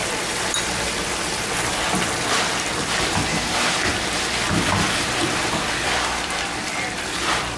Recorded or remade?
remade